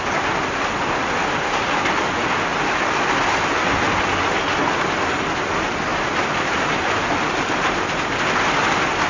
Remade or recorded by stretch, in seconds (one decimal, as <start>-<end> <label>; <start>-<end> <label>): 0.0-5.9 recorded; 5.9-7.2 remade; 7.2-9.1 recorded